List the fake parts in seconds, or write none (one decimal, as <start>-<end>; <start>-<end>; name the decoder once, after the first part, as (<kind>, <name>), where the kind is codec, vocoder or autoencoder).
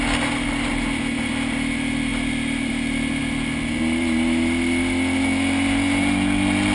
none